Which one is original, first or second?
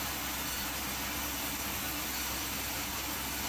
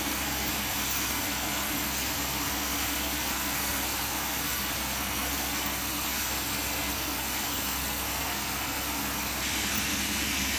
first